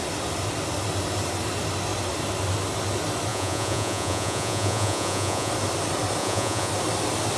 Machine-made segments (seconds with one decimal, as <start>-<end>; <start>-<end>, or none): 3.3-5.5; 6.2-6.7